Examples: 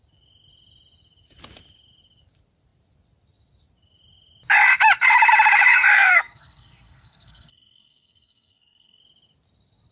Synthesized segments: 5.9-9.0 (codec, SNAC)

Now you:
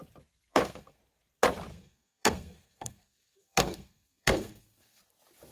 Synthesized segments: 0.5-1.0 (codec, SNAC); 1.7-5.0

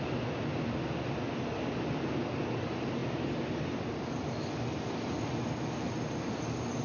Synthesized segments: none

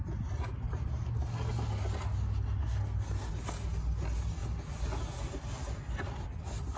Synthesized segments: 2.6-3.3 (codec, SNAC)

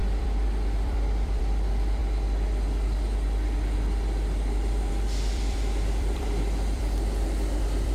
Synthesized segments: 0.0-2.0 (vocoder, BigVGAN v2); 4.9-7.9

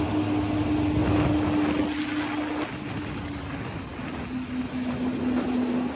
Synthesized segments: none

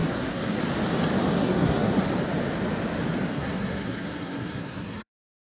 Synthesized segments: 0.0-0.6 (codec, SNAC); 1.3-2.0; 3.3-5.1

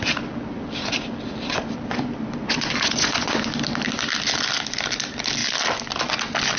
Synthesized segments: 2.4-3.5 (vocoder, Vocos)